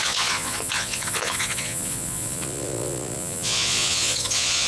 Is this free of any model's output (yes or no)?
no